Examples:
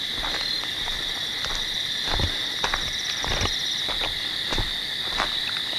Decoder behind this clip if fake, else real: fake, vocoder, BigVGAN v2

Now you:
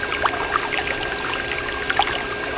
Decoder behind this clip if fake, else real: real